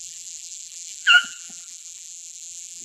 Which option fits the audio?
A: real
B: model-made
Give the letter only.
B